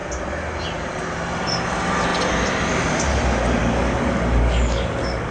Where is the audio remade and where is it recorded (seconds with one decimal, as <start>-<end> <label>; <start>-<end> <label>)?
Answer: 0.0-3.6 recorded; 3.6-5.3 remade